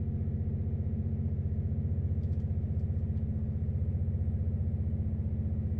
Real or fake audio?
real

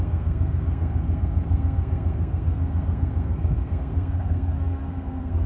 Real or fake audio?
fake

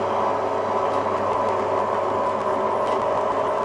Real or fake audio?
real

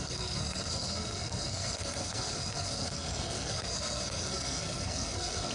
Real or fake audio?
fake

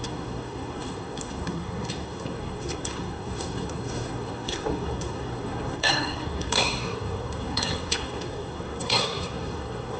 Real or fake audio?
fake